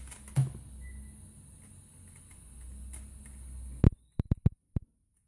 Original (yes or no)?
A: yes